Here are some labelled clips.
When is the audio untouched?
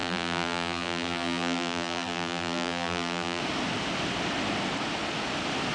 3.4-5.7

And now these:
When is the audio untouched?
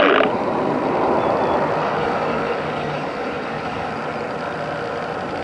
0.0-1.8; 3.9-5.4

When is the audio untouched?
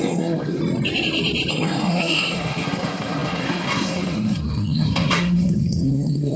0.6-1.5